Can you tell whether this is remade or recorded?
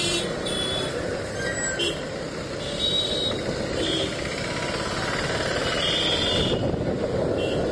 recorded